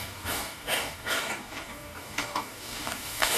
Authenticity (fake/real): fake